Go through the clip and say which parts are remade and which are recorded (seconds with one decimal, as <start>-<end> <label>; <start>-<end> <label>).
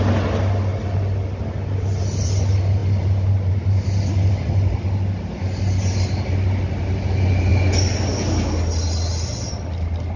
0.0-10.2 recorded